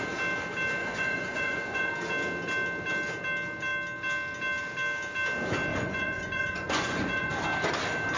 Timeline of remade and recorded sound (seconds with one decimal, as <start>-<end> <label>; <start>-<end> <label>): 0.0-0.8 recorded; 0.8-1.9 remade; 1.9-5.7 recorded; 5.7-7.3 remade; 7.3-8.2 recorded

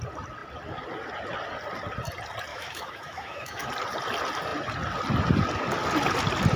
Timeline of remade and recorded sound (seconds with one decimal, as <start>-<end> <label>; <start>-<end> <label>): 0.0-2.5 recorded; 2.5-3.7 remade; 3.7-6.6 recorded

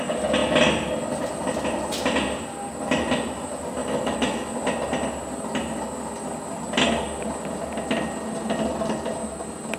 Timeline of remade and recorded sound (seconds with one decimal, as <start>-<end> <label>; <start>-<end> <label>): 0.0-3.8 recorded; 3.8-4.5 remade; 4.5-9.8 recorded